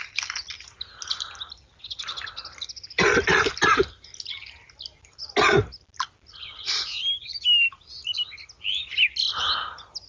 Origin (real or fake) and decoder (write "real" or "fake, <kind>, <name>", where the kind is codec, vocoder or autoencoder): real